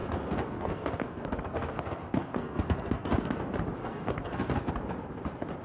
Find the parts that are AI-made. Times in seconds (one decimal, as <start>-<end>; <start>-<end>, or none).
0.0-3.4; 3.8-4.7